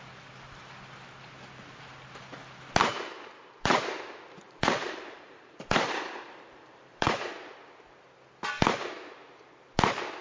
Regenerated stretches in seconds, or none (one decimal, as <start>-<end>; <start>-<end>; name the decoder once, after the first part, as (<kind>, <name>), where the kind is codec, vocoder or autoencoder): 2.9-7.3 (vocoder, BigVGAN v2)